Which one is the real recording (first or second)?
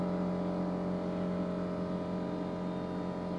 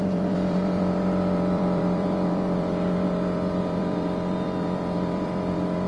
first